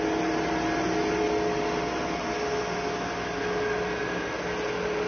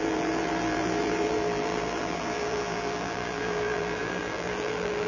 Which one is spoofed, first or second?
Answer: second